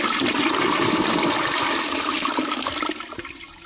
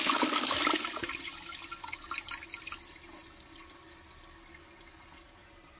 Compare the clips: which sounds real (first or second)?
second